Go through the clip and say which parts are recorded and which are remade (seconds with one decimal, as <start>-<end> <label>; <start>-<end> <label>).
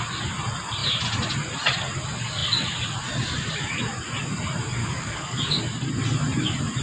0.0-4.8 recorded; 4.8-5.6 remade; 5.6-6.8 recorded